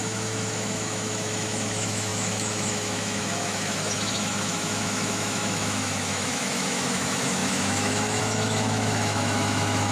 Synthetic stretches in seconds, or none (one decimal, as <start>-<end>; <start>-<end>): 0.0-9.9